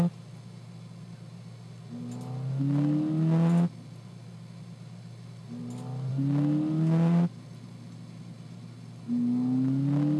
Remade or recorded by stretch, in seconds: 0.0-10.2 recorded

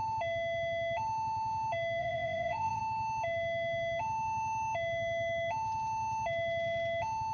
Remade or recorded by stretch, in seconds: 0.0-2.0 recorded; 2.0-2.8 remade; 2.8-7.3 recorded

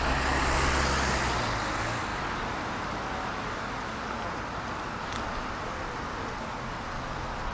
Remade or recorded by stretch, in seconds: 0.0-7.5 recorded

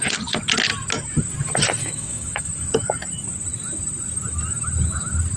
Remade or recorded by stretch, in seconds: 0.0-1.8 recorded; 1.8-2.5 remade; 2.5-5.4 recorded